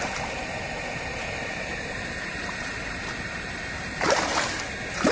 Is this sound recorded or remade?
remade